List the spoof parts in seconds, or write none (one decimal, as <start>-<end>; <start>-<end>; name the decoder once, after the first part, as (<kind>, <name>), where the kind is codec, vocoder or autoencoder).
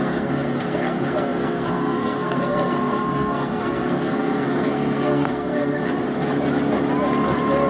0.0-5.8 (codec, SNAC)